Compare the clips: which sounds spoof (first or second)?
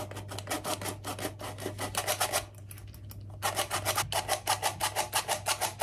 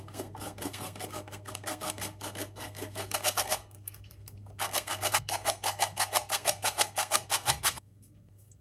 second